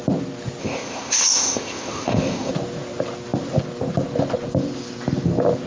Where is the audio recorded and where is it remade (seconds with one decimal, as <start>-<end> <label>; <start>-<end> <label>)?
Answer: 0.0-0.6 recorded; 0.6-2.5 remade; 2.5-5.7 recorded